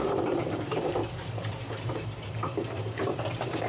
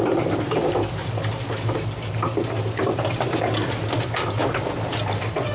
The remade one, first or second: first